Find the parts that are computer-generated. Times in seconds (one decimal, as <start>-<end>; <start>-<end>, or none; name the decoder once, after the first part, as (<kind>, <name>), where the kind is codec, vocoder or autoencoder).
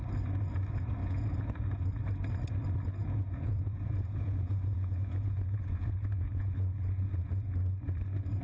1.0-1.8 (vocoder, Vocos); 3.0-7.5